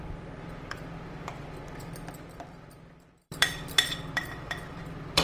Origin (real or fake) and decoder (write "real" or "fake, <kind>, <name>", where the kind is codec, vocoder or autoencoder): fake, vocoder, BigVGAN v2